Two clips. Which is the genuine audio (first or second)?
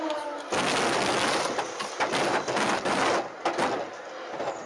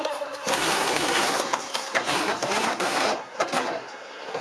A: first